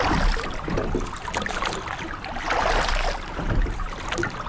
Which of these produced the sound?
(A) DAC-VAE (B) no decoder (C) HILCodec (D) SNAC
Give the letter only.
B